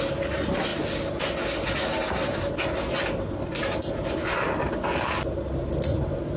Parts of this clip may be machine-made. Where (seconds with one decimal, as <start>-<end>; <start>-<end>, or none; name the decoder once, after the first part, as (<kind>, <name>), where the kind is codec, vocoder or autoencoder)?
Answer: none